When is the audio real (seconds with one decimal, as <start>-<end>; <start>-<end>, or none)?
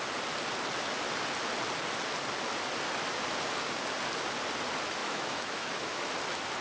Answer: 0.0-5.0; 6.1-6.6